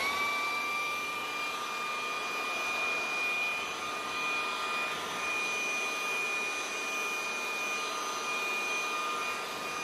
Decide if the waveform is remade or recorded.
recorded